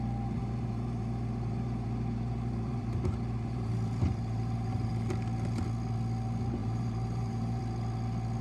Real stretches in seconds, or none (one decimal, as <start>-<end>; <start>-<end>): 0.0-0.4; 4.9-6.6; 7.6-8.4